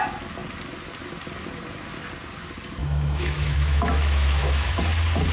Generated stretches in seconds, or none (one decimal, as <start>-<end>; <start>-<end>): 2.8-4.8

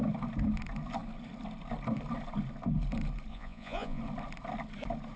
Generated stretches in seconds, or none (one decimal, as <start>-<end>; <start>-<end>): 3.3-4.0

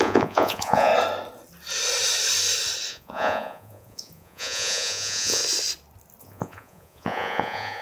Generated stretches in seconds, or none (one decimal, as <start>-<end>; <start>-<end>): 0.0-0.9; 2.9-5.4; 6.2-7.8

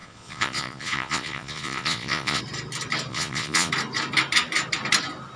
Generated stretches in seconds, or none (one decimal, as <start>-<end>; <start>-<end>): 0.0-2.4; 3.1-3.7

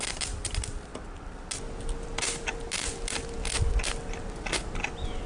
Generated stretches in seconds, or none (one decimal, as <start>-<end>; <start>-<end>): none

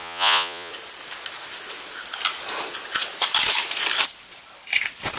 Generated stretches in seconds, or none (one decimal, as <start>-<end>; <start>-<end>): 0.0-0.7

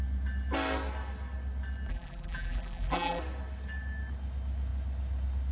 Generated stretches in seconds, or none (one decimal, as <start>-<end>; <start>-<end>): 1.9-3.2

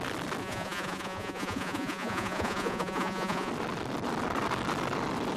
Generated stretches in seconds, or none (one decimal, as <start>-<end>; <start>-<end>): 0.4-3.5